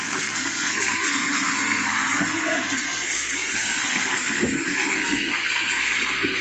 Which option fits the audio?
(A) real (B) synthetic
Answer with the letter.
B